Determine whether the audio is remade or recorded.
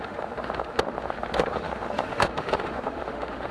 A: remade